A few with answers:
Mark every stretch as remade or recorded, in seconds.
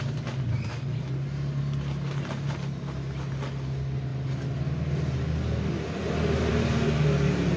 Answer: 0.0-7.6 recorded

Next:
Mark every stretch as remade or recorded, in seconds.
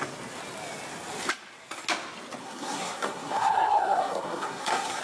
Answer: 0.0-2.4 recorded; 2.4-5.0 remade